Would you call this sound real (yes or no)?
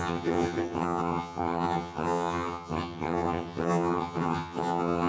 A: no